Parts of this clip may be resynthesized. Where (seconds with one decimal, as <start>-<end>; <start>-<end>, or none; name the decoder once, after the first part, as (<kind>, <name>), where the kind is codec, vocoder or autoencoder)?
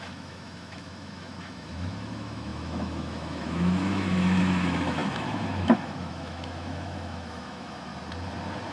0.0-7.9 (autoencoder, DAC-VAE)